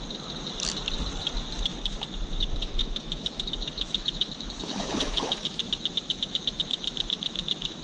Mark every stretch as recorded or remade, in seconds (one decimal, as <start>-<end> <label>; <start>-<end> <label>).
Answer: 0.0-2.8 recorded; 2.8-7.8 remade